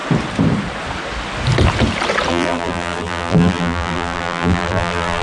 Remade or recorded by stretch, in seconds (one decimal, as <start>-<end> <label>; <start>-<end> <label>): 0.0-2.3 recorded; 2.3-5.2 remade